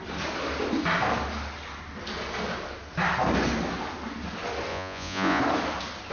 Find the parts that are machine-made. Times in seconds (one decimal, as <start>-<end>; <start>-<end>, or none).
4.7-5.4